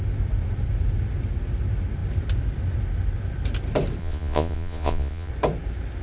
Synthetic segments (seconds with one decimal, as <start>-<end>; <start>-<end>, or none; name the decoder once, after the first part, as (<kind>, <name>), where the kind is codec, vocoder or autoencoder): 4.0-5.3 (vocoder, Vocos)